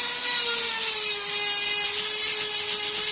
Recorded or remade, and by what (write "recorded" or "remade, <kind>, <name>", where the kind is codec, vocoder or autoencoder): recorded